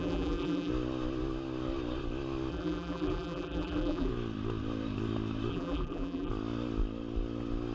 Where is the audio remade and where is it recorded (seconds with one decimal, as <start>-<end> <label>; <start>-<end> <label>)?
0.0-0.7 remade; 0.7-2.5 recorded; 2.5-4.1 remade; 4.1-5.5 recorded; 5.5-6.3 remade; 6.3-7.7 recorded

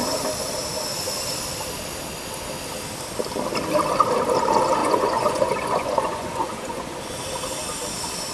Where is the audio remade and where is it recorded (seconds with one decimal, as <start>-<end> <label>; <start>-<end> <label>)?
0.0-4.8 recorded; 4.8-6.9 remade; 6.9-8.3 recorded